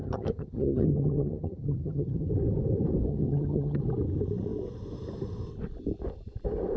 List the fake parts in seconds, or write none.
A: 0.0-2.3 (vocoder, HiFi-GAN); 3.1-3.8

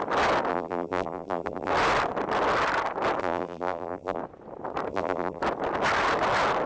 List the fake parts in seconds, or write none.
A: 0.5-1.7 (vocoder, BigVGAN v2); 3.2-4.2; 4.9-5.4

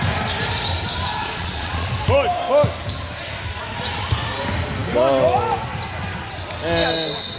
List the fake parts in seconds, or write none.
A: 1.2-1.9 (vocoder, Vocos)

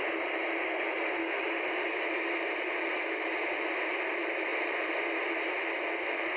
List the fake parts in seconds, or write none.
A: none

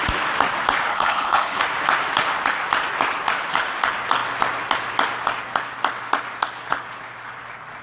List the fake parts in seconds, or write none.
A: 0.9-1.6 (codec, HILCodec)